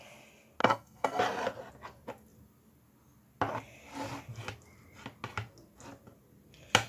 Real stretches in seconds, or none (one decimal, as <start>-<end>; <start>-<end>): 0.0-0.6; 1.2-6.9